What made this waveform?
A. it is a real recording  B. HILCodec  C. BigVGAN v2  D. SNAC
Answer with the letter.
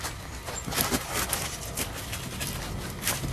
A